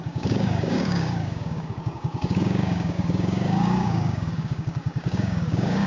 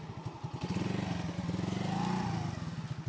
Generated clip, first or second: first